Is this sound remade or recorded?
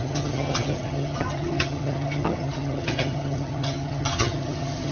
remade